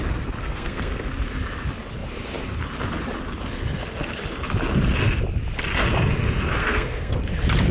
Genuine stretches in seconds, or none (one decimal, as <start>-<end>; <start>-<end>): 0.0-0.4; 1.1-6.6; 7.2-7.7